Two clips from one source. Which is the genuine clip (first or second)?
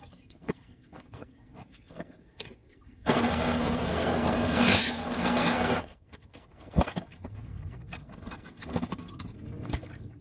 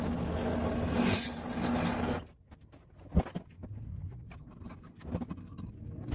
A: second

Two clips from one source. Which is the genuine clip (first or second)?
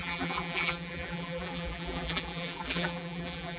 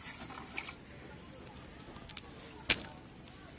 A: second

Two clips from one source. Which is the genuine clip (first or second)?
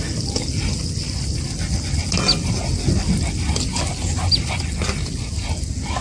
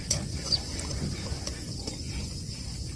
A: first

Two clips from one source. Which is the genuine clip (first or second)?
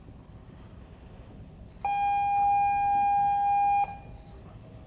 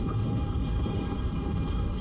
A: first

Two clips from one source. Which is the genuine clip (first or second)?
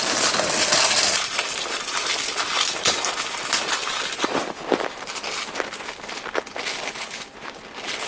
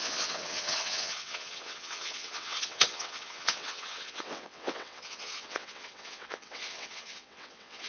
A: first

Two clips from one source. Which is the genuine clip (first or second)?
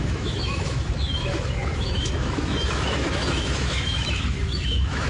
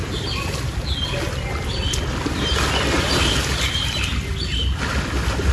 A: second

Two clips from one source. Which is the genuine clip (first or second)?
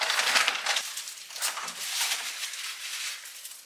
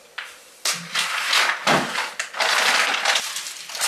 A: second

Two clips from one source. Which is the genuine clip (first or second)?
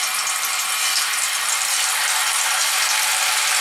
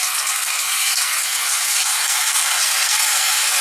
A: first